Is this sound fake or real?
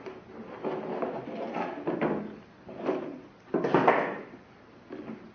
real